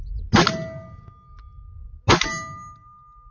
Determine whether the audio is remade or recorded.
recorded